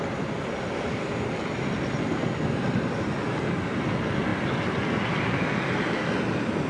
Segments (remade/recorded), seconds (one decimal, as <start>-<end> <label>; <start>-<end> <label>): 0.0-6.7 recorded